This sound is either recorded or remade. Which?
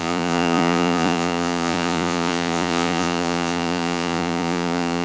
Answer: remade